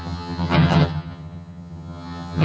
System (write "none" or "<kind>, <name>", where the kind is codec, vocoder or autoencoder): vocoder, HiFi-GAN